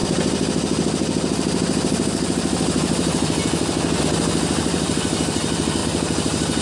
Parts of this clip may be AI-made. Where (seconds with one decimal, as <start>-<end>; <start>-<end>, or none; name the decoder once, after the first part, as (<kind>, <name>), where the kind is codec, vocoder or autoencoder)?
none